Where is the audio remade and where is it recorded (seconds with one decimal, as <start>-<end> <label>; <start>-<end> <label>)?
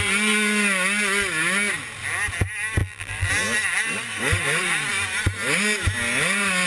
0.0-2.8 recorded; 2.8-3.3 remade; 3.3-6.7 recorded